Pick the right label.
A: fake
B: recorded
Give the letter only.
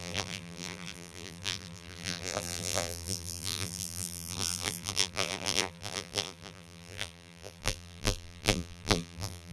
A